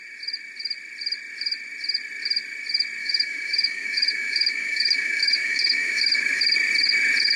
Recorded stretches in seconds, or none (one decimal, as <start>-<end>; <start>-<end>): 0.0-3.0; 6.4-7.4